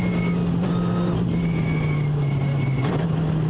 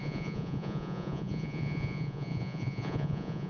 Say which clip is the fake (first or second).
second